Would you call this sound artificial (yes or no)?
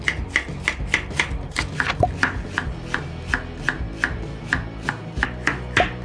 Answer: no